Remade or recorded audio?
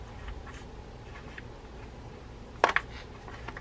recorded